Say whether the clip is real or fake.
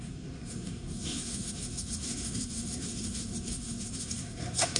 fake